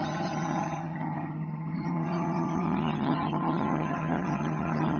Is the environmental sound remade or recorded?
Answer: remade